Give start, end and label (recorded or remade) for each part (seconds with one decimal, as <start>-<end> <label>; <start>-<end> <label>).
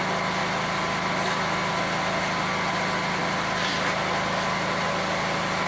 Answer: 0.0-5.7 recorded